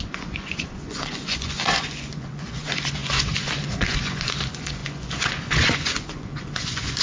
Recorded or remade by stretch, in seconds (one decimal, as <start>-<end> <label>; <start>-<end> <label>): 0.0-7.0 remade